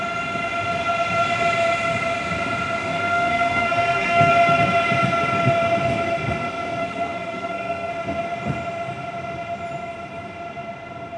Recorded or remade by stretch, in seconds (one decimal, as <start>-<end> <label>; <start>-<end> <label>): 0.0-2.8 recorded; 2.8-4.3 remade; 4.3-6.8 recorded; 6.8-7.9 remade; 7.9-11.2 recorded